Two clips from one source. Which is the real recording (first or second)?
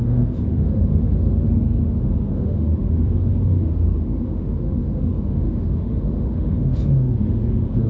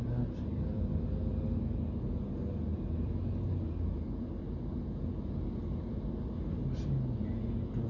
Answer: second